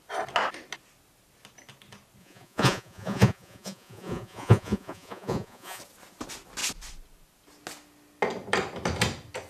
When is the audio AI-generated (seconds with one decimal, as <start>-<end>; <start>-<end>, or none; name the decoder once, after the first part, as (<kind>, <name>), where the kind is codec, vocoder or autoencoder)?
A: 2.2-5.8 (vocoder, Vocos)